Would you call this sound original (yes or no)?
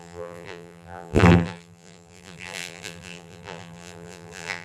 no